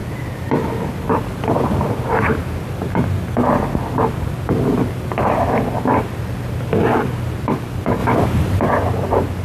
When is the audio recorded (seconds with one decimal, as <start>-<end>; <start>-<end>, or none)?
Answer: 0.0-9.4